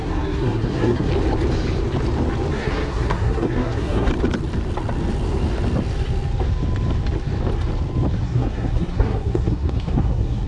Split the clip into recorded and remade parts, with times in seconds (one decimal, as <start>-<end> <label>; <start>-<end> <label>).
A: 0.0-1.1 remade; 1.1-2.5 recorded; 2.5-4.1 remade; 4.1-8.2 recorded; 8.2-10.5 remade